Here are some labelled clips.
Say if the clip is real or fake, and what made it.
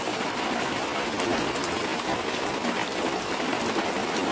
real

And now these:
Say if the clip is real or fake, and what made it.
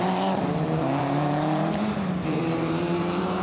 fake, vocoder, BigVGAN v2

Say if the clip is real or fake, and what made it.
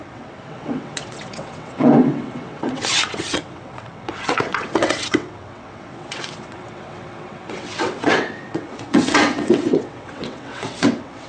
fake, vocoder, WaveNeXt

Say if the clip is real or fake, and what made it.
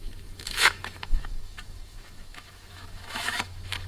fake, autoencoder, DAC-VAE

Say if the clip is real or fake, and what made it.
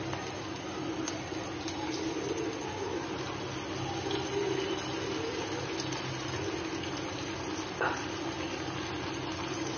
real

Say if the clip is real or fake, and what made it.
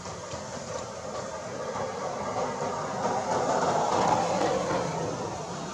real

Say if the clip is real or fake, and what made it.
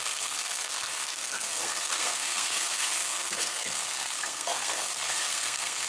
fake, codec, SNAC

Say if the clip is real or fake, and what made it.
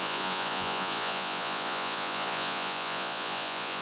fake, vocoder, Vocos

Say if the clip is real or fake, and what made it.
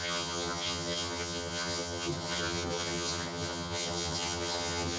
fake, vocoder, HiFi-GAN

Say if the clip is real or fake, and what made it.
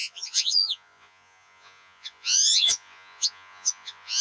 fake, vocoder, Vocos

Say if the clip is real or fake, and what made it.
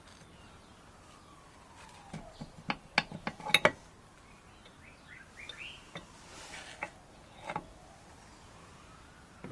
real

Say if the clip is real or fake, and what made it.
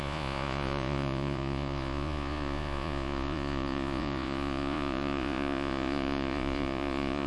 fake, vocoder, Vocos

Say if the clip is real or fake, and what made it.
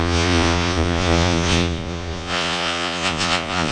fake, vocoder, Vocos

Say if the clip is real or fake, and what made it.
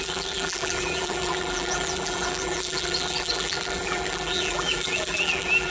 fake, vocoder, BigVGAN v2